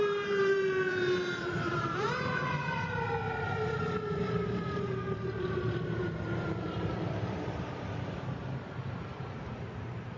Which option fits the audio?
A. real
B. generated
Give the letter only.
B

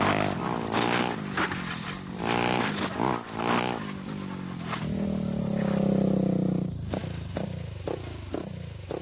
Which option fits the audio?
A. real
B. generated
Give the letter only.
A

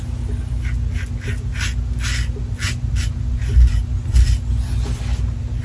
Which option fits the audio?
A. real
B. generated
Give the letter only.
A